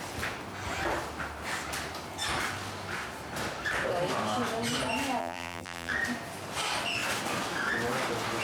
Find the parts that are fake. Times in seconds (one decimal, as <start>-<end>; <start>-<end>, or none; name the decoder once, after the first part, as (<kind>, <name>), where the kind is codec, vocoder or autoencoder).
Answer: 5.2-5.9 (vocoder, BigVGAN v2)